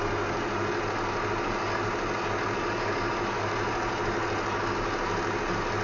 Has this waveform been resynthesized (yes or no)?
no